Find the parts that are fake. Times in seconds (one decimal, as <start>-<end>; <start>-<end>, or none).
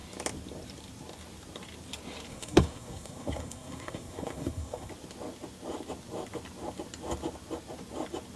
2.3-4.9